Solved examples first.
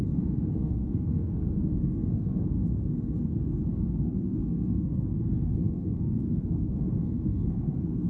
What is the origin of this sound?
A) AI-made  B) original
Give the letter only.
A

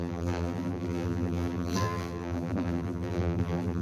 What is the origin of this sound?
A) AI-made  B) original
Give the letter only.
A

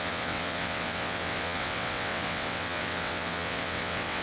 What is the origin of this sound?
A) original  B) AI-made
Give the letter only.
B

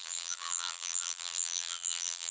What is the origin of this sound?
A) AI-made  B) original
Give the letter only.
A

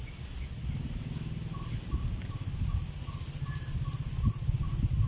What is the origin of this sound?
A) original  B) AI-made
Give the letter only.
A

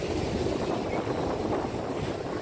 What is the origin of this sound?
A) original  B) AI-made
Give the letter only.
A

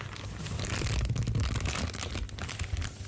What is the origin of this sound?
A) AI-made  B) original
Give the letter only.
B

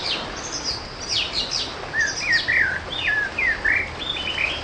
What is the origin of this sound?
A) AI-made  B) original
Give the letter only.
B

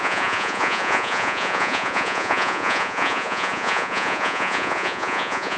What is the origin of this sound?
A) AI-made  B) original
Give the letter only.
A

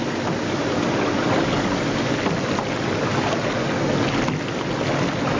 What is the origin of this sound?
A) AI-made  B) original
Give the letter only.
B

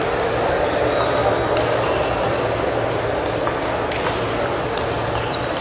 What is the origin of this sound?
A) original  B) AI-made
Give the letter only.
A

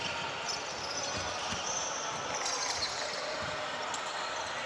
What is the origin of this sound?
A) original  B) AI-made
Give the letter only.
A